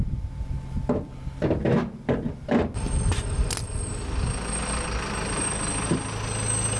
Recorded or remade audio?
recorded